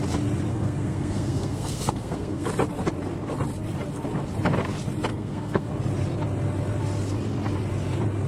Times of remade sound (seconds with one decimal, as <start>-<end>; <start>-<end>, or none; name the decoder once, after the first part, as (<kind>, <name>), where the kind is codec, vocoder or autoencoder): 0.5-2.5 (codec, SNAC); 5.1-5.7